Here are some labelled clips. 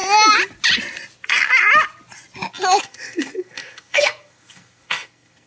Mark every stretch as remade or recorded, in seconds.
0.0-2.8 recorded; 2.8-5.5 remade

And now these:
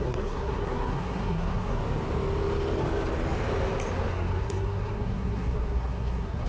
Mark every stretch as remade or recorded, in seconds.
0.0-1.8 remade; 1.8-4.1 recorded; 4.1-6.5 remade

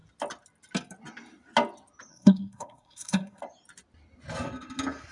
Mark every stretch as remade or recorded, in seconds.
0.0-2.1 recorded; 2.1-3.4 remade; 3.4-5.1 recorded

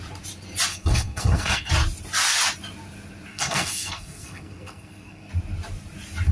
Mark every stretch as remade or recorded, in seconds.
0.0-0.7 recorded; 0.7-1.7 remade; 1.7-3.3 recorded; 3.3-5.3 remade; 5.3-6.3 recorded

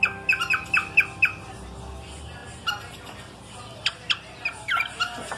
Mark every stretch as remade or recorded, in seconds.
0.0-5.4 recorded